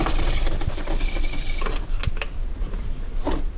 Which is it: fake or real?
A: real